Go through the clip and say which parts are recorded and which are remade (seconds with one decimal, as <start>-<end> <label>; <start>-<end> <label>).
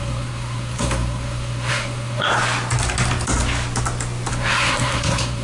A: 0.0-2.3 remade; 2.3-4.3 recorded; 4.3-5.4 remade